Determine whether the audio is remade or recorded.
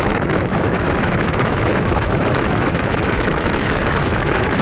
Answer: remade